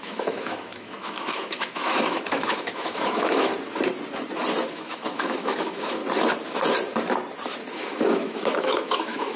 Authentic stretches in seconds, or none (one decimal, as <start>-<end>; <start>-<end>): 3.5-4.7; 6.0-7.7